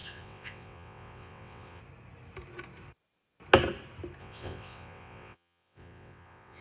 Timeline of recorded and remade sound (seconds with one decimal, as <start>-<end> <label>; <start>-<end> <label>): 0.0-1.8 remade; 1.8-4.2 recorded; 4.2-6.6 remade